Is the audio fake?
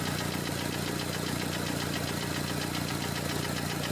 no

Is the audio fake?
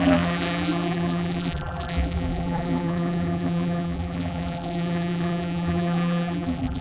yes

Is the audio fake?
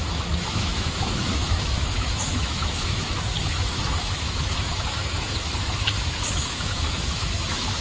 yes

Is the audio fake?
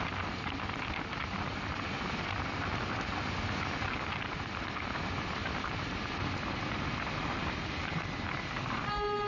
no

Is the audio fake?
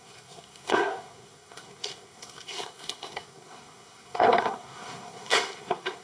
yes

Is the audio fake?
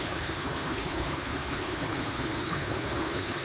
yes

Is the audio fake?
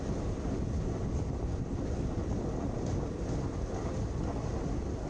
no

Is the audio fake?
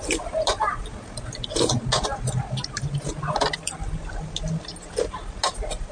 no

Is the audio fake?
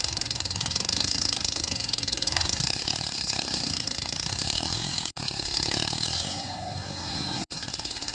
yes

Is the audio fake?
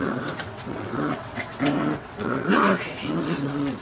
yes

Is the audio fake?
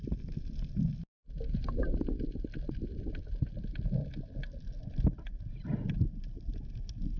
no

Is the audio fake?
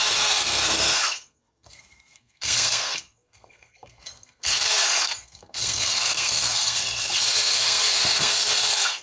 yes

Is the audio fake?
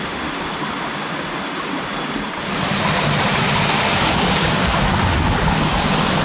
no